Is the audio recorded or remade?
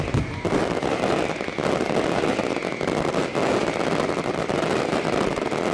recorded